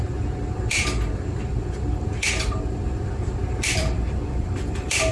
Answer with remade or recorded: remade